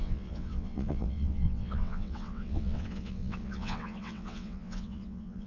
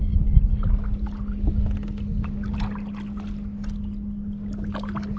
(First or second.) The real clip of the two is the second